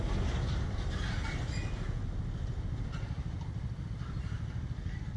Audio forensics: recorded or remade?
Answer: recorded